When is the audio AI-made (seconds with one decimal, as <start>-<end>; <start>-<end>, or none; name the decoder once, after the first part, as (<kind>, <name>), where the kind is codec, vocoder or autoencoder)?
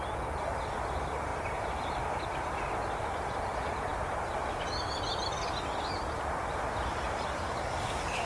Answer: 1.3-2.2 (vocoder, BigVGAN v2); 6.9-7.7